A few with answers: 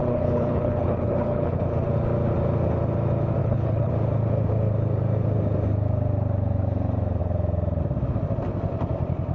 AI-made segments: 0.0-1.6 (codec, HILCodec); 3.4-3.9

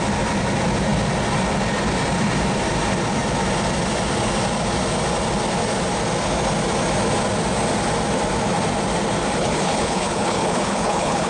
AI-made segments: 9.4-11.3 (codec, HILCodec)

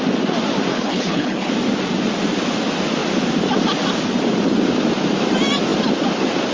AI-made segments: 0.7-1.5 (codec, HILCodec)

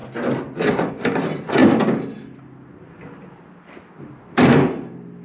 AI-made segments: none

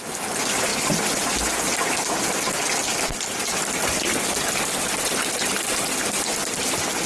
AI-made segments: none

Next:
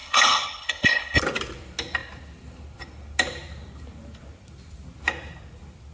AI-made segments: 0.0-1.2 (codec, HILCodec)

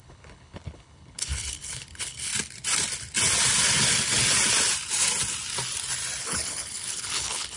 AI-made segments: 0.0-2.3 (codec, HILCodec); 6.2-7.6